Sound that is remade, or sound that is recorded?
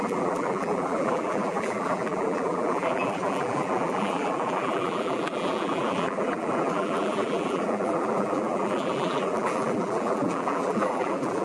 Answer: remade